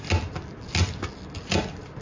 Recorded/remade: recorded